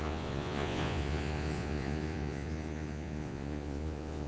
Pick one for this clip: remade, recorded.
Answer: remade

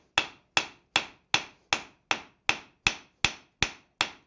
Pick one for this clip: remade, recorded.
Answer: recorded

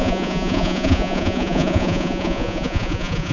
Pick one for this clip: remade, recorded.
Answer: remade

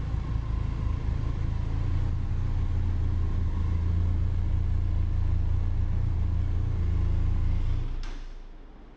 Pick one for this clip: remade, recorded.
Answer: recorded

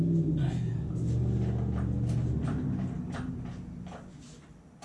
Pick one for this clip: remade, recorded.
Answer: recorded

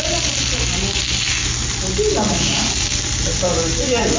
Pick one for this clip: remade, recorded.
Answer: recorded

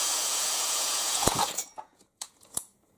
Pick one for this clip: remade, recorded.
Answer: remade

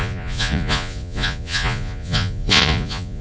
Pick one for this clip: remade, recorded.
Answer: remade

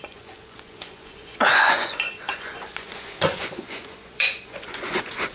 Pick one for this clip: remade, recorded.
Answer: remade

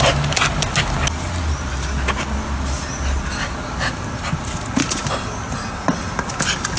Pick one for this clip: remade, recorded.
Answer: recorded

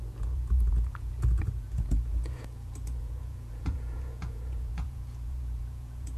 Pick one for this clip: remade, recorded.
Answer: remade